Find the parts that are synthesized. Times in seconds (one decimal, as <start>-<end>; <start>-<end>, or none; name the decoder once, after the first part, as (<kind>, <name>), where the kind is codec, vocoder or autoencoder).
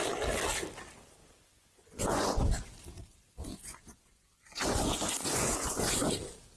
1.2-2.5 (vocoder, Vocos); 3.5-6.1